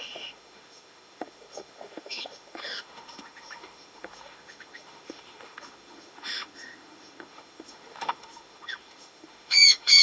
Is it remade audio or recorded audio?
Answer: remade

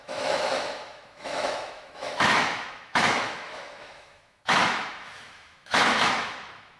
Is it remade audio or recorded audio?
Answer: remade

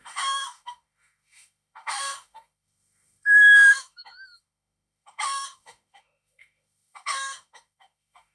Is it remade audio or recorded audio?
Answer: remade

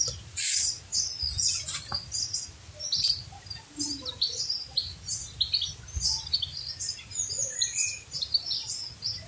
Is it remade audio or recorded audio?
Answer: recorded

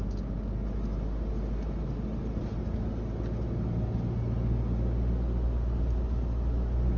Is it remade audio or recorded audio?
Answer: recorded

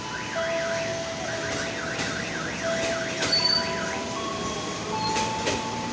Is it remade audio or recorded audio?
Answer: recorded